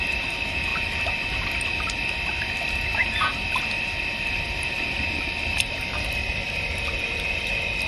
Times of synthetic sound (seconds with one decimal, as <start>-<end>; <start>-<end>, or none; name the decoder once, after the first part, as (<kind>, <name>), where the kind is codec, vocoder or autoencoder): 0.0-0.7 (vocoder, BigVGAN v2); 1.5-7.9